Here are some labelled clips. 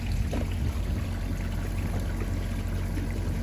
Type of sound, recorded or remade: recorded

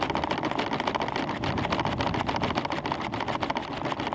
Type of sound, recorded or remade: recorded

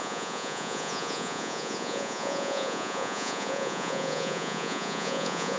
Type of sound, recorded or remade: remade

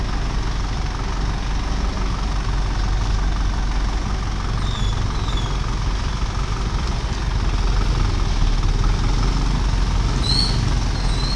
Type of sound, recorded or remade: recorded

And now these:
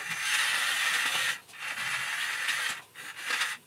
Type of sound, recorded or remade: recorded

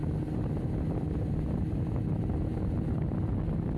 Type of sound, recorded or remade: recorded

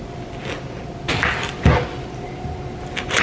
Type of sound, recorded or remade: recorded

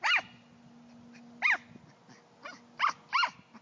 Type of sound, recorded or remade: recorded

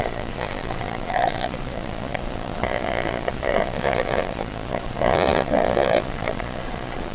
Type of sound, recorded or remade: remade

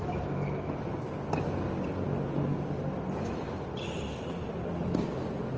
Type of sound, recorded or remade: recorded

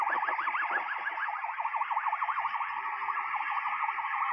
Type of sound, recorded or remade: recorded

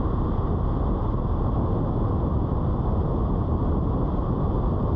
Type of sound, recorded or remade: recorded